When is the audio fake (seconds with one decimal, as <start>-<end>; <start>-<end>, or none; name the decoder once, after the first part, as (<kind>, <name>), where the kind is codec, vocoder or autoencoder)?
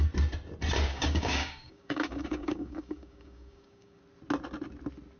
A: 0.9-4.0 (codec, DAC)